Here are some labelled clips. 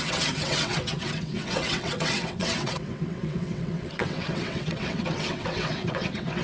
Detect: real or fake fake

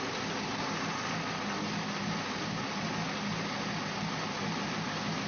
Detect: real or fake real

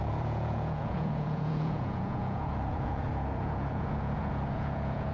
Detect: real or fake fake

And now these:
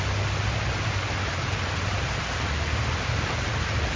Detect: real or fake real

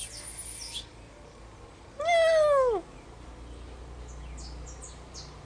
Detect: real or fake real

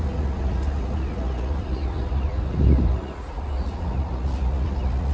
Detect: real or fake fake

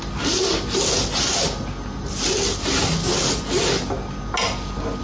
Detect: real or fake real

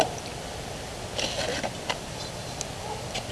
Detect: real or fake real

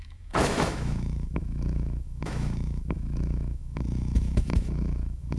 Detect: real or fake fake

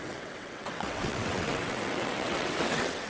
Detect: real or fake fake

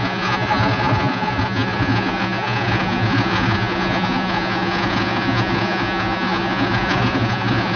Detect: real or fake fake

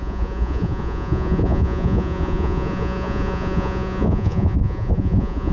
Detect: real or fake fake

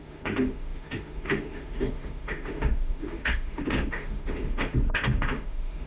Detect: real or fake fake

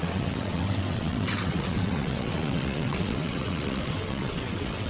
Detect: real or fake fake